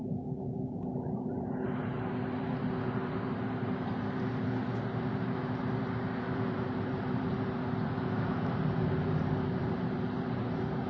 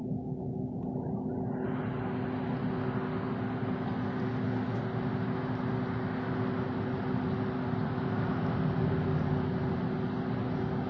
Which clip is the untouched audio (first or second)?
second